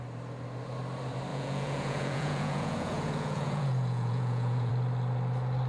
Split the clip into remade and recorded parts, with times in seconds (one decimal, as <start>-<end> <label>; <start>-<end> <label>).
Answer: 0.0-1.3 recorded; 1.3-4.7 remade; 4.7-5.7 recorded